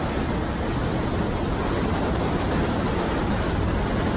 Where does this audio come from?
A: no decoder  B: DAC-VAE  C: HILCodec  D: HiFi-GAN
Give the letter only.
A